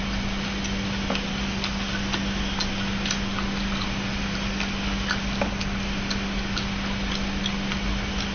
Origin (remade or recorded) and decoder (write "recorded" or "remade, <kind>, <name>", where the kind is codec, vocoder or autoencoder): recorded